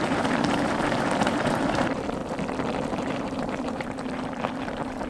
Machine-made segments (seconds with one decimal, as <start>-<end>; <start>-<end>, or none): 0.0-2.2; 2.9-5.1